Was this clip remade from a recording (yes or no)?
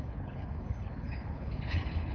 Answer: yes